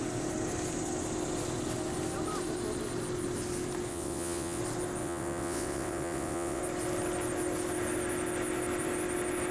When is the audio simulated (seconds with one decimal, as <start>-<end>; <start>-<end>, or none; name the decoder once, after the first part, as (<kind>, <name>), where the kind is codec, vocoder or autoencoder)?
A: 3.9-4.6 (vocoder, WaveNeXt); 5.0-6.6